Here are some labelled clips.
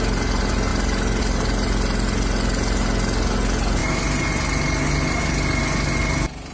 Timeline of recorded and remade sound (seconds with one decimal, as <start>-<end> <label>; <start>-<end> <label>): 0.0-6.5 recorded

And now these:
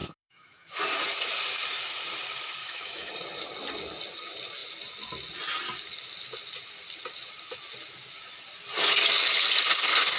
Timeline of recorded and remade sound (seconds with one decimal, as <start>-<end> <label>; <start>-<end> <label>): 0.0-0.8 remade; 0.8-2.6 recorded; 2.6-3.1 remade; 3.1-10.2 recorded

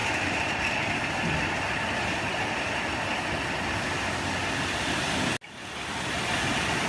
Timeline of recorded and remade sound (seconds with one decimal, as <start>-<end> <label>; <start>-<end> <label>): 0.0-6.9 recorded